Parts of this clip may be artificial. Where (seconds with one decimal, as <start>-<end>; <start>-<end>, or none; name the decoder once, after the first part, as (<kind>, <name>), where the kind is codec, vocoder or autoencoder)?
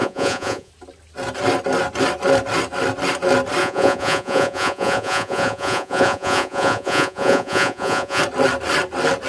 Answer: 0.0-0.7 (vocoder, Vocos); 3.6-8.2